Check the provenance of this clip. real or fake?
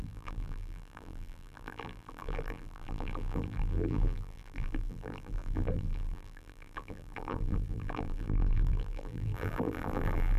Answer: fake